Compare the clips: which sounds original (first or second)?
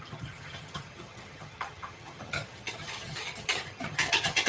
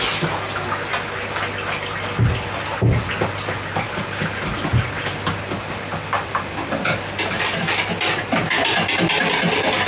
second